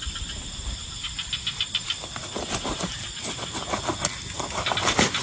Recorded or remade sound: recorded